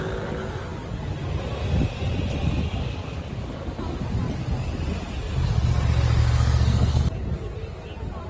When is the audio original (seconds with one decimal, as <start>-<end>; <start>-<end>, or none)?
0.0-6.2; 7.0-8.3